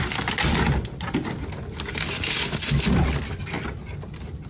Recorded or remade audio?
recorded